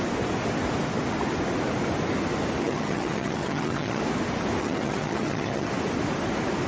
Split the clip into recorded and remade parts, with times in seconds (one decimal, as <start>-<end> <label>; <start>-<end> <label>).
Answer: 0.0-2.6 recorded; 2.6-4.0 remade; 4.0-4.6 recorded; 4.6-5.7 remade; 5.7-6.7 recorded